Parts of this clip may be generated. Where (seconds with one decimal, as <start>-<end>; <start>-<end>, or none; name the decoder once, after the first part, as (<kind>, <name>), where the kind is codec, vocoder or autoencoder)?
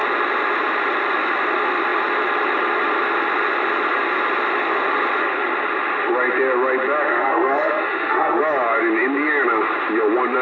7.1-8.4 (codec, SNAC)